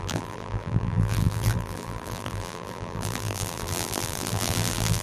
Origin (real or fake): fake